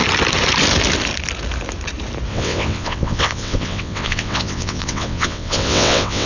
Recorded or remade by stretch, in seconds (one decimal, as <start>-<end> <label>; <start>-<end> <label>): 0.0-2.3 recorded; 2.3-6.3 remade